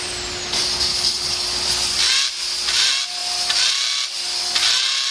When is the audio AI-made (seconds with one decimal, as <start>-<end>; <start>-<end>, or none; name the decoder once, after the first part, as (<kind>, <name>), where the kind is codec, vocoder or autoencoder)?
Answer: 0.9-1.4 (codec, HILCodec)